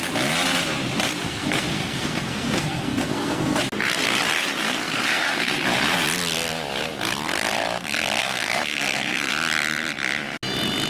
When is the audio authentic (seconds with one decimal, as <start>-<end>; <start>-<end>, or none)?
0.0-1.2; 3.6-4.6; 5.6-8.2; 9.3-10.9